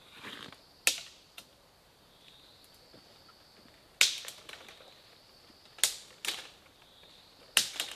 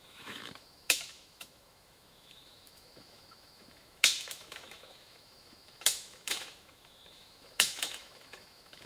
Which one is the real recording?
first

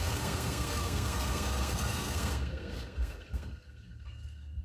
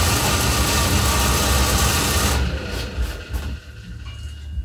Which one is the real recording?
second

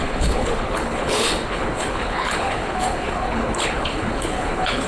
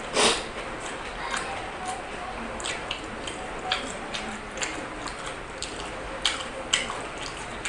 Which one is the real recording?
second